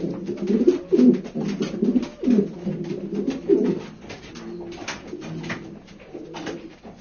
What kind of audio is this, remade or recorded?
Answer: recorded